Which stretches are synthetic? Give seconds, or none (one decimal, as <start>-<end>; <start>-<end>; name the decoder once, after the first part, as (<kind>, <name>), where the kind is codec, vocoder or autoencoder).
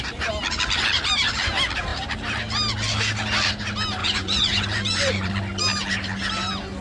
4.0-5.3 (vocoder, Vocos)